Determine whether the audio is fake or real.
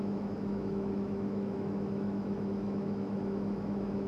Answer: fake